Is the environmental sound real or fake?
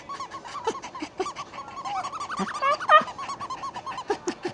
real